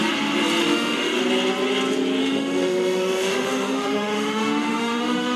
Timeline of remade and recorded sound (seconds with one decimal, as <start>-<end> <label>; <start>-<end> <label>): 0.0-0.6 recorded; 0.6-1.2 remade; 1.2-2.2 recorded; 2.2-5.4 remade